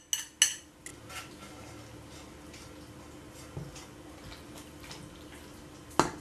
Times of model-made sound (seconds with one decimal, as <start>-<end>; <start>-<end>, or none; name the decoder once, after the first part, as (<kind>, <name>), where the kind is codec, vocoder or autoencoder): none